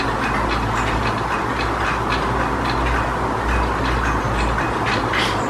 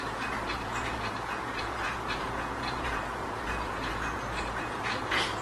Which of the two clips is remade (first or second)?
second